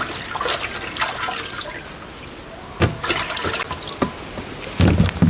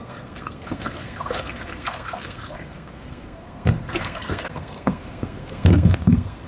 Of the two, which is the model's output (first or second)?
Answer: second